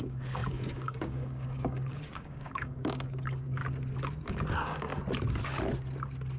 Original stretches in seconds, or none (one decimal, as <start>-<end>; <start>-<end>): 3.6-4.3; 4.9-6.4